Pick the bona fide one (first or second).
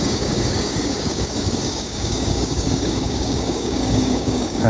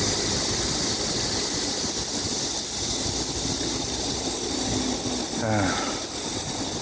second